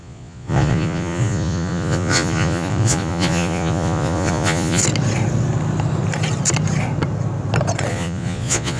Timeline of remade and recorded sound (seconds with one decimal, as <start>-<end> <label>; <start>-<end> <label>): 0.0-4.8 remade; 4.8-7.9 recorded; 7.9-8.8 remade